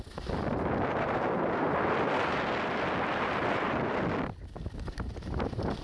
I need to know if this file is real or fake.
real